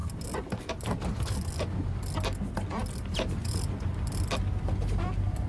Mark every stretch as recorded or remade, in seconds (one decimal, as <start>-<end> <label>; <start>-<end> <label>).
0.0-0.7 remade; 0.7-3.4 recorded; 3.4-4.6 remade; 4.6-5.5 recorded